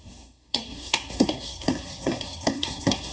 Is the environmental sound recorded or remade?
remade